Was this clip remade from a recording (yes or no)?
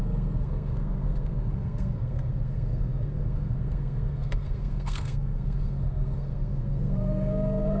yes